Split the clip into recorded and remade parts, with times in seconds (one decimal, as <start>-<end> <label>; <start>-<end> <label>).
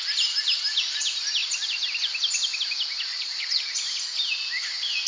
0.0-3.1 recorded; 3.1-3.8 remade; 3.8-5.1 recorded